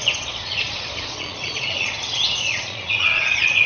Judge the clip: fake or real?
fake